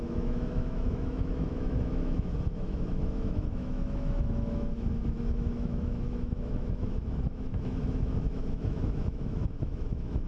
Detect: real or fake fake